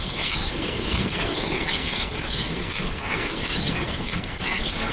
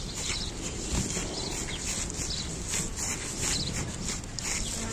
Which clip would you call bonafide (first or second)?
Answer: second